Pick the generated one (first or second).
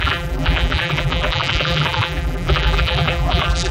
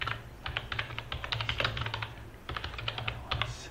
first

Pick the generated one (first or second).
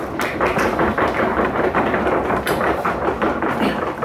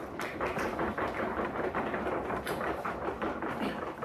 second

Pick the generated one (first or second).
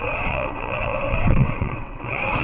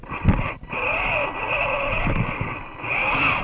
first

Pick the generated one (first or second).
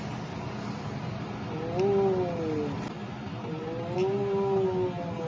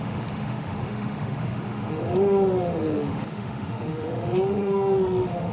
second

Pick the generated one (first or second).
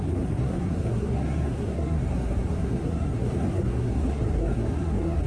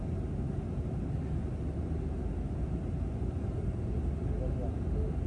first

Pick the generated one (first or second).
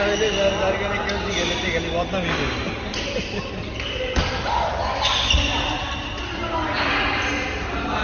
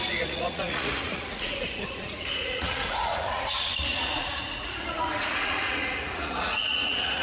second